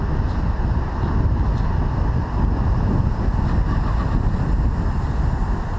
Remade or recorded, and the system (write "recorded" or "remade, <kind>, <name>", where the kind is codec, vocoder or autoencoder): recorded